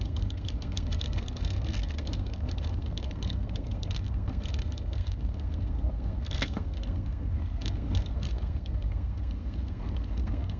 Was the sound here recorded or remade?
remade